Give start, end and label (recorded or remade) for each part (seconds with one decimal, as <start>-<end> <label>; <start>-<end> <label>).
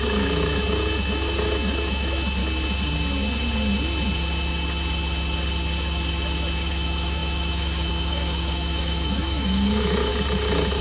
0.0-2.4 remade; 2.4-6.7 recorded; 6.7-10.1 remade; 10.1-10.8 recorded